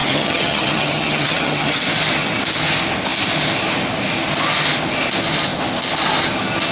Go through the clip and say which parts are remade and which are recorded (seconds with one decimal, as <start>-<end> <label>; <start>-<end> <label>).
0.0-1.8 remade; 1.8-6.7 recorded